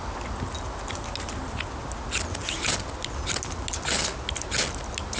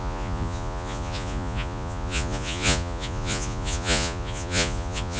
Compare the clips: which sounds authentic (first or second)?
first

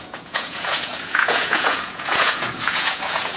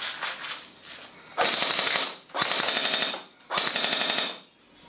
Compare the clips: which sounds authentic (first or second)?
second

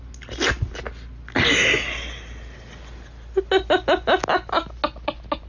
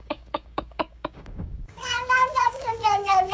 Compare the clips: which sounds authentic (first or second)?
first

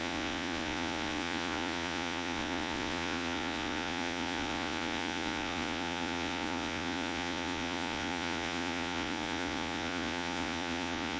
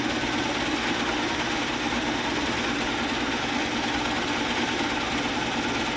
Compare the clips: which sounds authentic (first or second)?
second